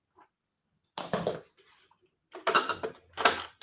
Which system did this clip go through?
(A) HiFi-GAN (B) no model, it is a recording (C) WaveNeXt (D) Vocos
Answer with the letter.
B